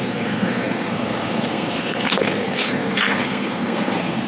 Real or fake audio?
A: fake